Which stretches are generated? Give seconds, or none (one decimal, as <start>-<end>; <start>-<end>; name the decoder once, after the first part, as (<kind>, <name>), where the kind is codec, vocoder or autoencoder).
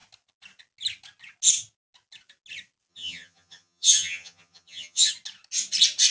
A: 2.9-5.1 (vocoder, HiFi-GAN)